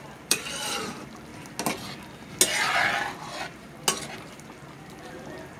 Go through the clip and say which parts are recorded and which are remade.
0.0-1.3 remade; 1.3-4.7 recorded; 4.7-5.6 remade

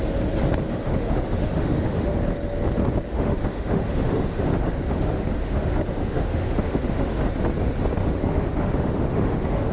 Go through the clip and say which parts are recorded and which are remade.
0.0-0.7 recorded; 0.7-2.2 remade; 2.2-3.1 recorded; 3.1-7.3 remade; 7.3-8.0 recorded; 8.0-9.7 remade